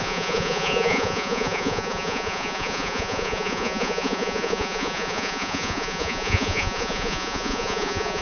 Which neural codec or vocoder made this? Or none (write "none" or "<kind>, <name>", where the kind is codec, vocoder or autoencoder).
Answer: vocoder, Vocos